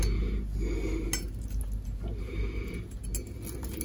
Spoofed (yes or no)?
no